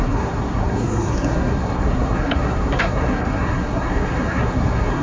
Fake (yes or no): yes